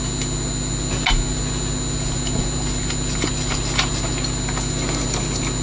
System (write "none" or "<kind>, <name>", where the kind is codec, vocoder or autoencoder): none